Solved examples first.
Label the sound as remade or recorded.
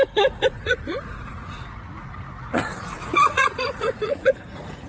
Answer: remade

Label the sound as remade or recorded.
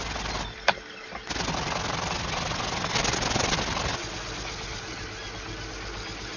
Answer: recorded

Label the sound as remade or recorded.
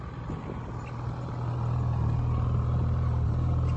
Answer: recorded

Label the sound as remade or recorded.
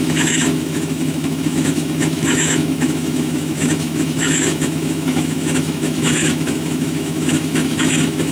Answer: remade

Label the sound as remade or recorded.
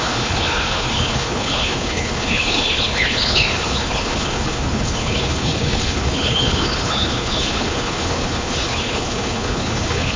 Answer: remade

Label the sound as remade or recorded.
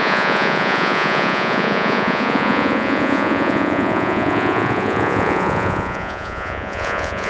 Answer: remade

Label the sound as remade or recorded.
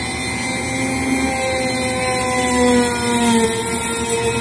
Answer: recorded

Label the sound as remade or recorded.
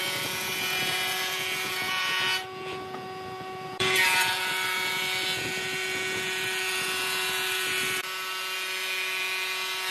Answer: remade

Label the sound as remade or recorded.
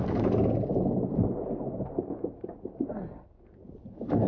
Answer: recorded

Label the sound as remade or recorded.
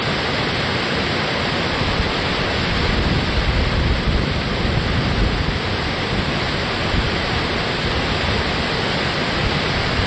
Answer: recorded